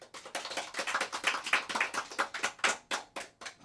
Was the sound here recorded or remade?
recorded